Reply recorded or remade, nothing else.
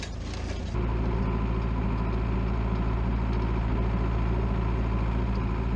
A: recorded